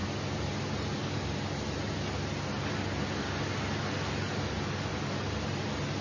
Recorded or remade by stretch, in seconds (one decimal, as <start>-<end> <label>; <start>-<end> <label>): 0.0-6.0 recorded